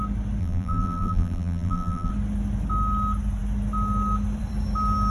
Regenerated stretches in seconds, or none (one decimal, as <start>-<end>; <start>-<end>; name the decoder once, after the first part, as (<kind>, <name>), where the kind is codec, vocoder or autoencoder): 0.4-2.1 (vocoder, BigVGAN v2)